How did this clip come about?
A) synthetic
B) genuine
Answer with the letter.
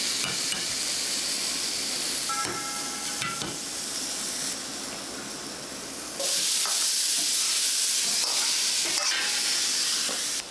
B